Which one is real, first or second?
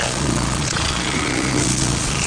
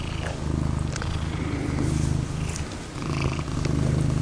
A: second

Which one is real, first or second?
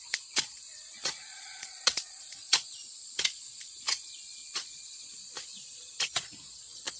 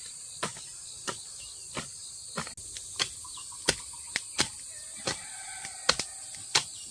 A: second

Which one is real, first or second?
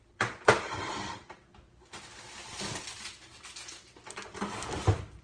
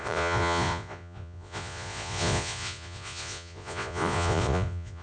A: first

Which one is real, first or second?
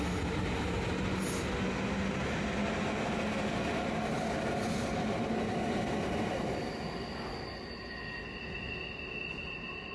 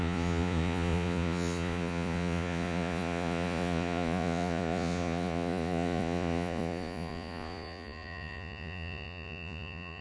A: first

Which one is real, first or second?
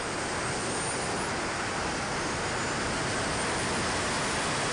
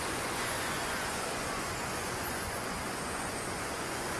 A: first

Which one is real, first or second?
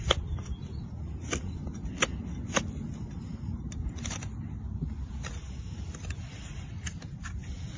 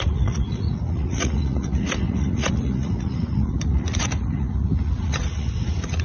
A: first